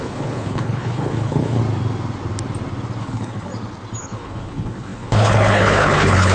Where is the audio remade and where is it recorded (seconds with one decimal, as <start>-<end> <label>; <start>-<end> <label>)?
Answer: 0.0-1.6 remade; 1.6-3.0 recorded; 3.0-3.5 remade; 3.5-4.0 recorded; 4.0-6.3 remade